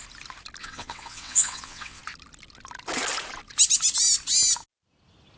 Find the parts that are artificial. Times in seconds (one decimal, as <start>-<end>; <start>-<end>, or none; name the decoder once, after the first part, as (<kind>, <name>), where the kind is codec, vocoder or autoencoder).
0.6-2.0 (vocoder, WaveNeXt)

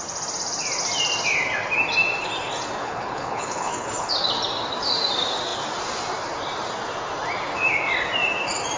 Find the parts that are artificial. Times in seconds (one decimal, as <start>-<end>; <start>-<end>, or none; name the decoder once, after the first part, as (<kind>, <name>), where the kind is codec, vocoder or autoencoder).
2.8-4.1 (codec, HILCodec)

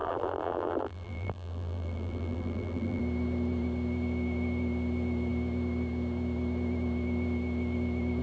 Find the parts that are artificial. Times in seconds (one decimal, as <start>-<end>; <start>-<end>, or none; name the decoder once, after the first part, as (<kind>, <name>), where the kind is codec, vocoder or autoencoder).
0.0-3.0 (vocoder, BigVGAN v2)